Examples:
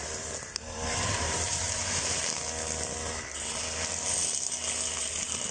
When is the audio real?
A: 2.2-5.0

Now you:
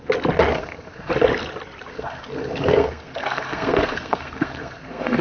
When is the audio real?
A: 0.0-0.5; 1.1-1.9

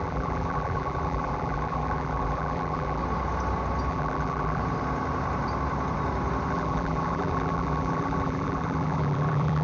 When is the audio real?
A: 3.0-3.9; 4.6-6.5

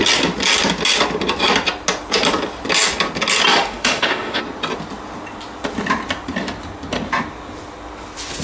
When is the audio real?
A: 0.0-3.5; 4.4-8.4

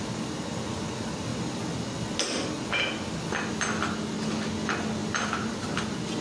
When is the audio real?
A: 0.0-5.0; 5.8-6.2